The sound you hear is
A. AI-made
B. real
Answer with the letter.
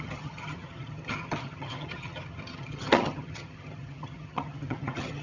A